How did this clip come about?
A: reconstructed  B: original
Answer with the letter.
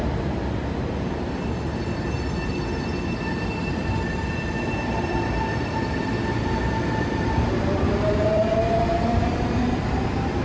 A